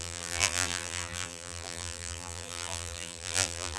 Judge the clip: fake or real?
fake